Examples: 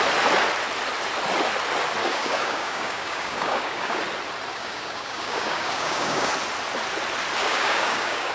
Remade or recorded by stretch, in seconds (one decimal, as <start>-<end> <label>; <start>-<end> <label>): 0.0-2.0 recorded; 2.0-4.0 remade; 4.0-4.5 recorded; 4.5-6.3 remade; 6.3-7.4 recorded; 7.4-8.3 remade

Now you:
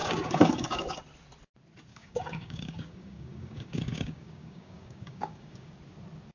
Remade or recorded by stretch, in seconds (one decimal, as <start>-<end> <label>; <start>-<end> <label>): 0.0-1.0 remade; 1.0-1.9 recorded; 1.9-5.7 remade; 5.7-6.3 recorded

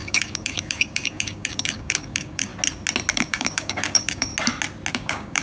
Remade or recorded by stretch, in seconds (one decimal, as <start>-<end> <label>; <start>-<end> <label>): 0.0-2.5 remade; 2.5-3.1 recorded; 3.1-4.3 remade; 4.3-4.9 recorded; 4.9-5.4 remade

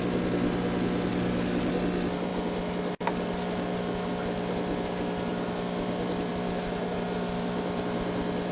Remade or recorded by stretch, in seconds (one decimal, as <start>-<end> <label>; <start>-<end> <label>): 0.0-1.1 recorded; 1.1-1.7 remade; 1.7-8.5 recorded

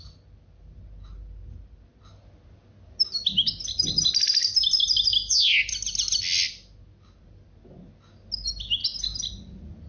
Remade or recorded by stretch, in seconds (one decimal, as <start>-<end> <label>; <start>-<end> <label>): 0.0-9.9 recorded